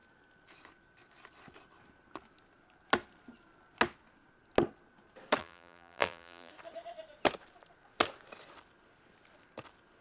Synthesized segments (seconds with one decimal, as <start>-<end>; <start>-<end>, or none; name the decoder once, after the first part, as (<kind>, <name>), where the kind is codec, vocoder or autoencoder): 5.4-6.5 (vocoder, BigVGAN v2)